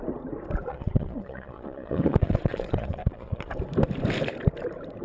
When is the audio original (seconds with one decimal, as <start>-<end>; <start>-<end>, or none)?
0.0-0.7; 3.5-5.0